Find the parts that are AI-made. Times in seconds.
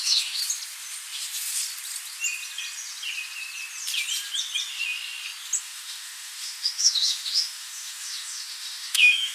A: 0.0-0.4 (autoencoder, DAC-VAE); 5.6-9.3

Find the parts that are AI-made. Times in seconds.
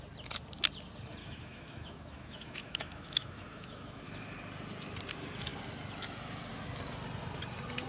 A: 1.2-4.0 (autoencoder, DAC-VAE)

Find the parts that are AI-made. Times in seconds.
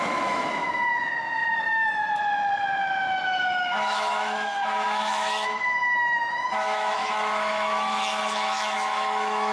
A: 0.0-9.5 (autoencoder, DAC-VAE)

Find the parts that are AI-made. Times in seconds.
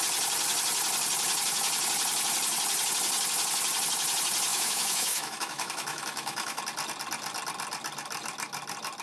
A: 4.5-6.6 (autoencoder, DAC-VAE)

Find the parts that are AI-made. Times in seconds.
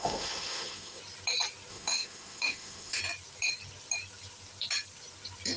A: 0.0-1.0 (autoencoder, DAC-VAE); 1.7-3.0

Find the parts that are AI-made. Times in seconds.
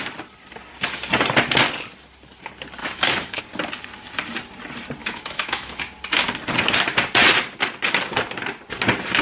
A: 2.8-3.4 (autoencoder, DAC-VAE); 5.0-5.8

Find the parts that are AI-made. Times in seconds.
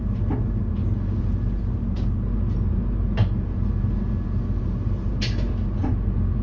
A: none